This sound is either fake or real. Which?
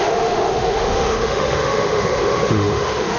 fake